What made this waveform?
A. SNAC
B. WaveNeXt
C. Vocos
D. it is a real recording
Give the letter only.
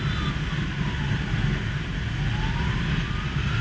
D